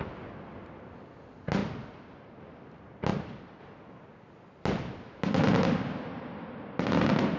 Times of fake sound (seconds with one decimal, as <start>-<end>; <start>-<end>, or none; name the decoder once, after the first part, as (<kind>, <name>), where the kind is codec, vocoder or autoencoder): none